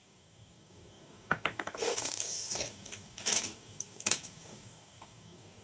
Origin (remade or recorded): remade